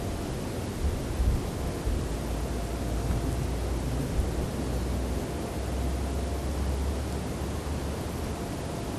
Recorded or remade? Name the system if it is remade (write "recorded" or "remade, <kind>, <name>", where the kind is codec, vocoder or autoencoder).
recorded